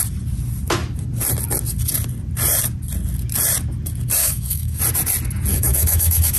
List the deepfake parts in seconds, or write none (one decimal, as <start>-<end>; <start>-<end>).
4.2-4.8; 5.5-6.4